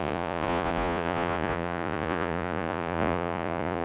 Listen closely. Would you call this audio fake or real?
fake